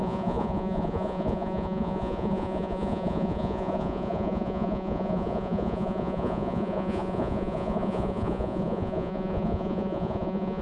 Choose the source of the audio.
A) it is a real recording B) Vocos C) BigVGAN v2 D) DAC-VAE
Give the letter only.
B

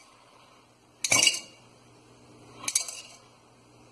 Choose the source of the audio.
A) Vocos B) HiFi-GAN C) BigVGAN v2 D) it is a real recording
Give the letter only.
D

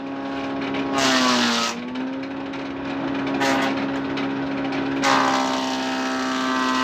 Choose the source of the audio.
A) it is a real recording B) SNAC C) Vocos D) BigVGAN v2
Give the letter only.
A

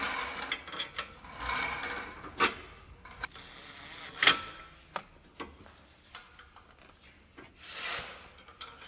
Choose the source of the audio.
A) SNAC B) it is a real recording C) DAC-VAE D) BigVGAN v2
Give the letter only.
B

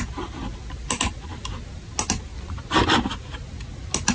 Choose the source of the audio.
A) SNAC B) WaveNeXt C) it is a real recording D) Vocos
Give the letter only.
C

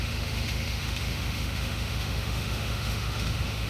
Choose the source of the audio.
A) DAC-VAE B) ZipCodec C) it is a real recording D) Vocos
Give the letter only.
A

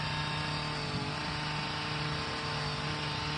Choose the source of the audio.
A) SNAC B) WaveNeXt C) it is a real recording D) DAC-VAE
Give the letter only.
C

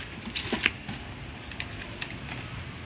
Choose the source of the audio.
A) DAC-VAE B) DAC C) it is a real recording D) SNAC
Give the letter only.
C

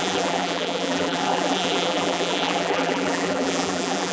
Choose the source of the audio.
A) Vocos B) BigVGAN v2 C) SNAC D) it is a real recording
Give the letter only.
B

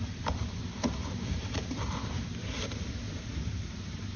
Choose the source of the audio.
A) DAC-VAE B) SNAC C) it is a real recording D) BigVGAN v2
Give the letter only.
D